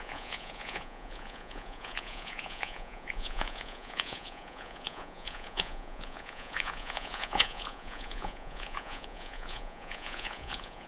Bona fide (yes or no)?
no